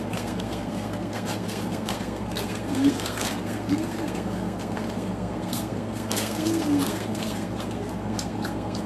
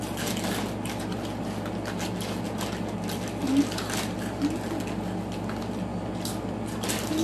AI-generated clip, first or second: first